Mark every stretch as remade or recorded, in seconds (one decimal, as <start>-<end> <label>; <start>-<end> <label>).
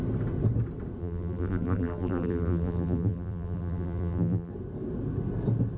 0.0-1.0 recorded; 1.0-4.5 remade; 4.5-5.8 recorded